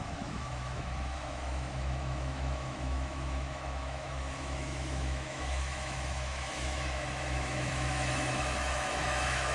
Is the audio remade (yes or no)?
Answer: yes